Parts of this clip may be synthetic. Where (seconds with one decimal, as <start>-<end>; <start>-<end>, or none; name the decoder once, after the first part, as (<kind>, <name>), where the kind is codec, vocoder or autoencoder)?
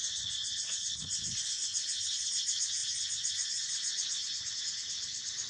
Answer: 0.0-2.3 (vocoder, Vocos); 2.8-4.6